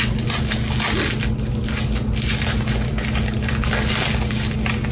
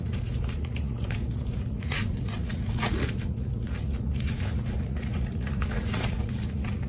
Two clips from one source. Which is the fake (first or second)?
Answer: second